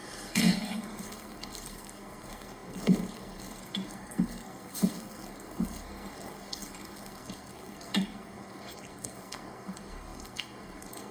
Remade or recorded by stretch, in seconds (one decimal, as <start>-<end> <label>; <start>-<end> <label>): 0.0-11.1 remade

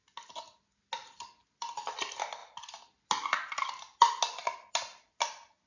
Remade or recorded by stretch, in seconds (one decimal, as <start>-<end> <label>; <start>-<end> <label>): 0.0-5.7 recorded

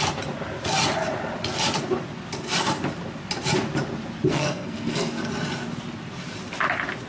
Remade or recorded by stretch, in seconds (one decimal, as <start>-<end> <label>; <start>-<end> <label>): 0.0-4.3 recorded; 4.3-5.3 remade; 5.3-7.1 recorded

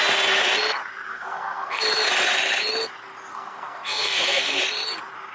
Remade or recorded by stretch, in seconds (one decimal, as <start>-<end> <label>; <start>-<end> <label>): 0.0-1.1 recorded; 1.1-1.8 remade; 1.8-3.3 recorded; 3.3-4.6 remade; 4.6-5.3 recorded

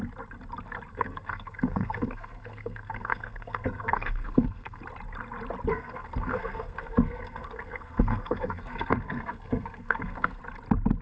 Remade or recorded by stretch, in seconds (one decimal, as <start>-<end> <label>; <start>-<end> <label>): 0.0-0.9 recorded; 0.9-4.8 remade; 4.8-5.7 recorded; 5.7-10.4 remade; 10.4-11.0 recorded

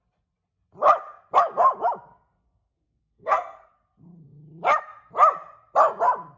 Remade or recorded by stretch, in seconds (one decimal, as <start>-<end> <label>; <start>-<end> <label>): 0.0-2.1 recorded; 2.1-3.7 remade; 3.7-6.4 recorded